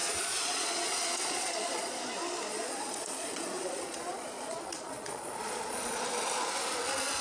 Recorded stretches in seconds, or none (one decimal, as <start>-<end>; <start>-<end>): 2.0-2.5; 6.0-7.2